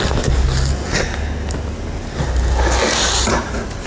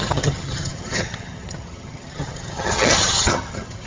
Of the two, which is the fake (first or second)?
second